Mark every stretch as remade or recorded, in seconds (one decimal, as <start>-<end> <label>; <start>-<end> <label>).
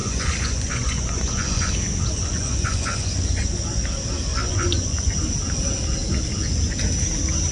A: 0.0-1.7 remade; 1.7-2.2 recorded; 2.2-3.8 remade; 3.8-4.3 recorded; 4.3-5.1 remade; 5.1-7.5 recorded